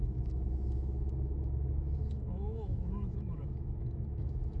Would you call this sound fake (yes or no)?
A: yes